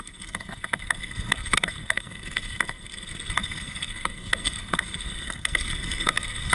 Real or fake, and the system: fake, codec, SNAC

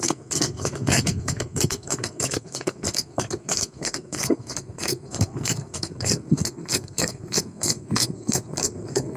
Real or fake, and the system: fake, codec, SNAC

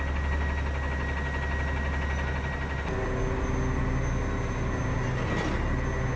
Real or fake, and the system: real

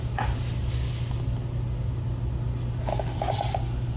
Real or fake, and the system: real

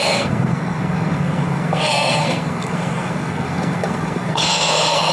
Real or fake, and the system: fake, codec, SNAC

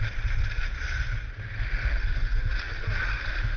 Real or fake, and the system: real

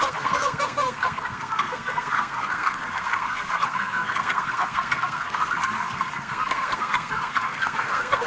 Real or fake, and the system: fake, codec, SNAC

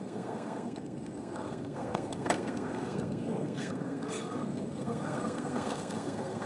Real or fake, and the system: fake, codec, SNAC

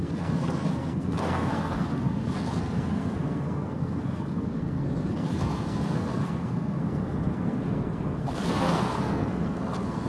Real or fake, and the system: fake, codec, SNAC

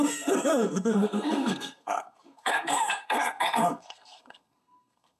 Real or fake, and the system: fake, codec, SNAC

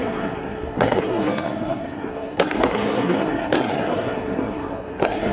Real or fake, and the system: fake, codec, SNAC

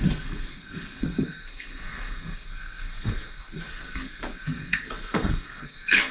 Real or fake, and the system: fake, codec, SNAC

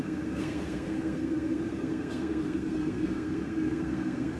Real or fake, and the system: fake, codec, SNAC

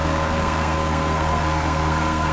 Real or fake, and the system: fake, codec, SNAC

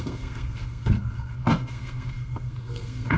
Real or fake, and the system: fake, codec, SNAC